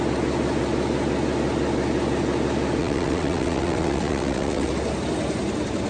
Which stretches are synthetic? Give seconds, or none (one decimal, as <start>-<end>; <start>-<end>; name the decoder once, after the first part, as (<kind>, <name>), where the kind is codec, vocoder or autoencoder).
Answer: 2.8-4.7 (vocoder, WaveNeXt)